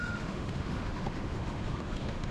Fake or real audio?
fake